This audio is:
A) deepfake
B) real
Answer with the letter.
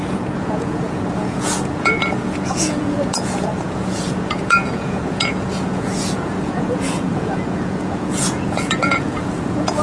A